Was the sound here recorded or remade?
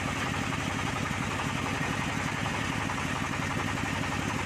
recorded